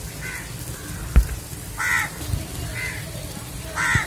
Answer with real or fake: fake